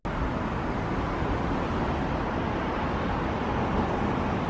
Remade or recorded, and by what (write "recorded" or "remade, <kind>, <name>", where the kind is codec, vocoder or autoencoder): recorded